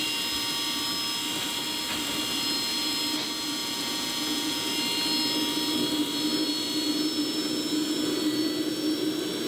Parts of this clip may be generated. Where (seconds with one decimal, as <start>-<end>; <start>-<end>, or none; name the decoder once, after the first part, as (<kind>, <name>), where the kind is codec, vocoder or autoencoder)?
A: 3.6-4.7 (vocoder, Vocos)